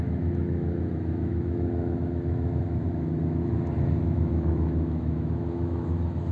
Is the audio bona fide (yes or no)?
no